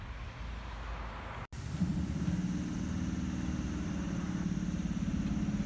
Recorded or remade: recorded